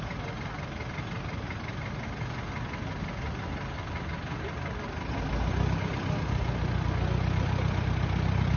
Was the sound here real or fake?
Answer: real